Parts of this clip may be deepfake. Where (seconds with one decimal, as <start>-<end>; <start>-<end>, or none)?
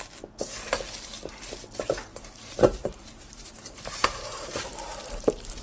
2.1-5.6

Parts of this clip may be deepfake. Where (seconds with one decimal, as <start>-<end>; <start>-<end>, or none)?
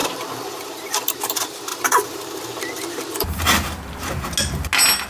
0.0-1.2; 1.7-3.3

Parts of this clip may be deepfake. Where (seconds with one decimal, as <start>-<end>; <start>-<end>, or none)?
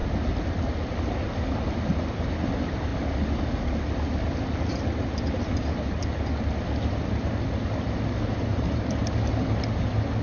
8.5-9.0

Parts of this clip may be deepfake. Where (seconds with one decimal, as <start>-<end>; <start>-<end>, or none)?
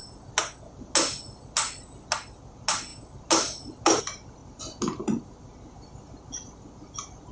none